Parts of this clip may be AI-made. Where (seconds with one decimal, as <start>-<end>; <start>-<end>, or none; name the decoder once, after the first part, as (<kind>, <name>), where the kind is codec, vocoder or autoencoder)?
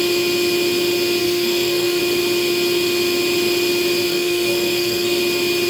1.2-2.0 (codec, SNAC); 4.1-5.2